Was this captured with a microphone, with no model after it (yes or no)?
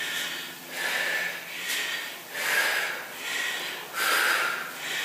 yes